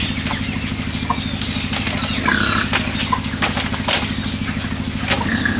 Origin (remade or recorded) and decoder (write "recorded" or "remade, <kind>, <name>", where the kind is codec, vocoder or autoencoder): recorded